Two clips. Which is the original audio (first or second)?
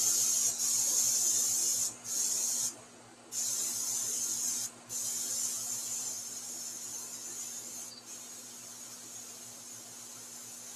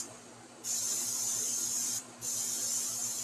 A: first